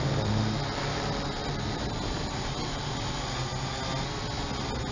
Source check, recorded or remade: recorded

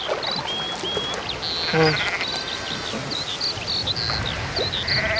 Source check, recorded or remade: recorded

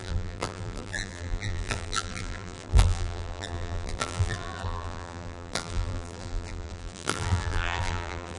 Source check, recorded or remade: remade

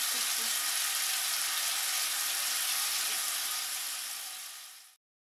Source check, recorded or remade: recorded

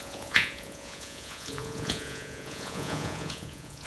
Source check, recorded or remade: remade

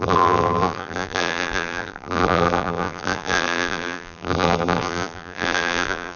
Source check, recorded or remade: remade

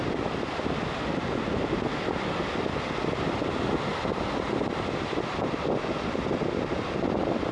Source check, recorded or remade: recorded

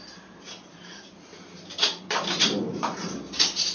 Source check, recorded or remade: recorded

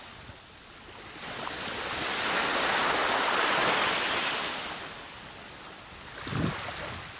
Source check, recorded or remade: recorded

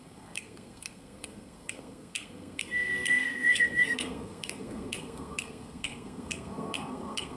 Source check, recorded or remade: remade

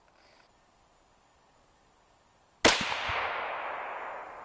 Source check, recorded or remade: recorded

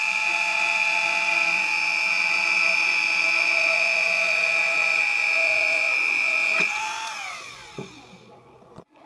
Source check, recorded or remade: remade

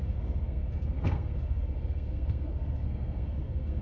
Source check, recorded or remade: remade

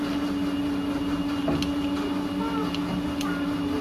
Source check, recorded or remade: recorded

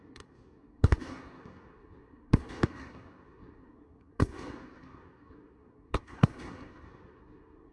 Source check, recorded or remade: remade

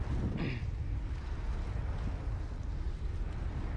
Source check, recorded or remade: recorded